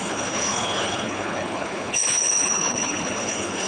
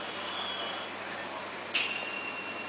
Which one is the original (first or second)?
second